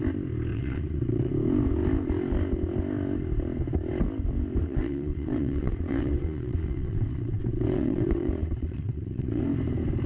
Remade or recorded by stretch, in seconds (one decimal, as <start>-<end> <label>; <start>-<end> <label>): 0.0-0.5 recorded; 0.5-1.3 remade; 1.3-4.6 recorded; 4.6-9.4 remade; 9.4-10.1 recorded